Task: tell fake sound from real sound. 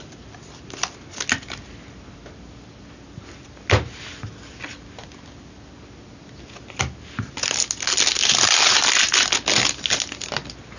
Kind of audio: real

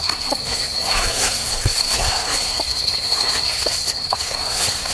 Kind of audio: fake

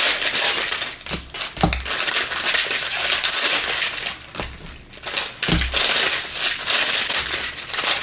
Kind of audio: real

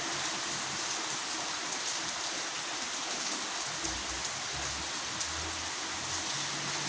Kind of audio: real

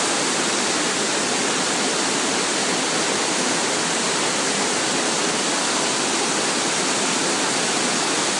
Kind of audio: real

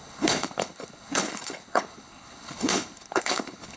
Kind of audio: fake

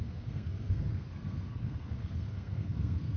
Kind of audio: fake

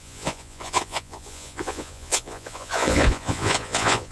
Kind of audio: fake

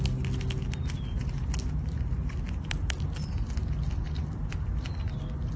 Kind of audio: real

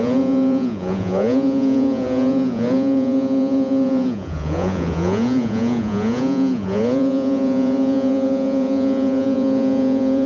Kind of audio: fake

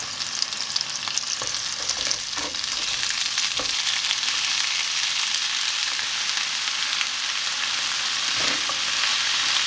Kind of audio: real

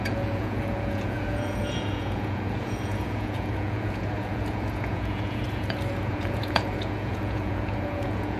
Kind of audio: fake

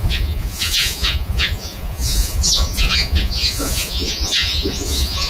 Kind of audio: fake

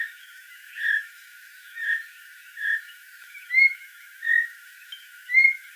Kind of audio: fake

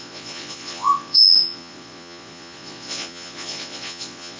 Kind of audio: fake